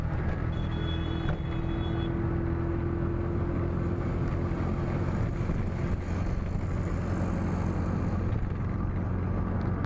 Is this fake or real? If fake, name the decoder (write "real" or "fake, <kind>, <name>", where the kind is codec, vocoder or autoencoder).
real